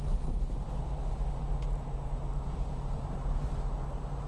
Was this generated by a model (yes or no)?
no